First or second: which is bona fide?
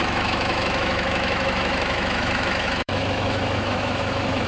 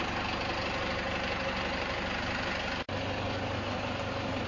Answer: second